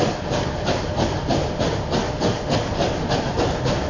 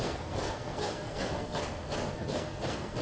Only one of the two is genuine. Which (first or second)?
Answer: first